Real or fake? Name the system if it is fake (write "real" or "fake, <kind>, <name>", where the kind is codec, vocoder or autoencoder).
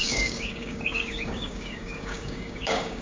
fake, codec, DAC